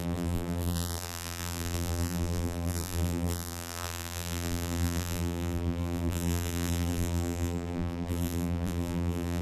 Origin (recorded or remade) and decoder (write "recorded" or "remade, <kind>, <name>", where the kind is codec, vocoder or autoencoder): remade, vocoder, BigVGAN v2